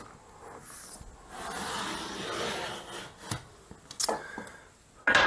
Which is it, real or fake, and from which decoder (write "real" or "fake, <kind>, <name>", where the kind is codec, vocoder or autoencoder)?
real